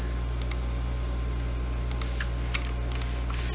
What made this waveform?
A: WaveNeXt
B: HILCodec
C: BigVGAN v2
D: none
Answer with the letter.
D